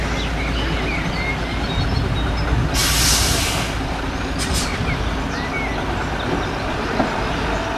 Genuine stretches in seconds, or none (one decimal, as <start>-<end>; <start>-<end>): 0.0-7.8